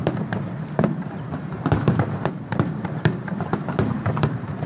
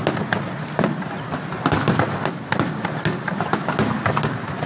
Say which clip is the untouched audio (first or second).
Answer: second